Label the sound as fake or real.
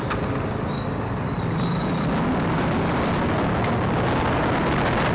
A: real